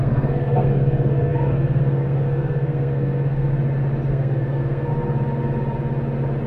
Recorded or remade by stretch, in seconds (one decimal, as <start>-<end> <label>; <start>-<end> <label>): 0.0-3.5 remade; 3.5-4.1 recorded; 4.1-4.9 remade; 4.9-6.5 recorded